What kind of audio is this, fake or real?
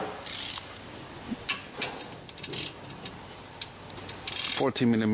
real